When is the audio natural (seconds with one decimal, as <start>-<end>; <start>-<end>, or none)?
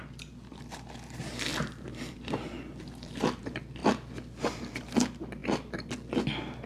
0.0-1.5; 3.4-3.8; 4.8-6.7